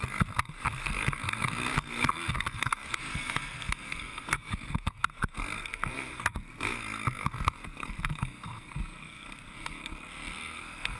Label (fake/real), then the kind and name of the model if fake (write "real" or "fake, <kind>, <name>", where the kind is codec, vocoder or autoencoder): fake, codec, SNAC